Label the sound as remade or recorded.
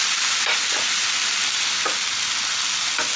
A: recorded